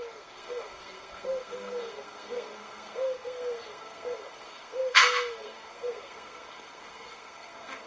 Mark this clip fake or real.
fake